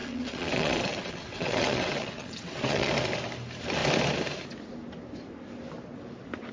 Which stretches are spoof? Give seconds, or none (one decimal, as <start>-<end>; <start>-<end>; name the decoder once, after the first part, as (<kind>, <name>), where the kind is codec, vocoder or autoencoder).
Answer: 0.0-2.9 (vocoder, WaveNeXt)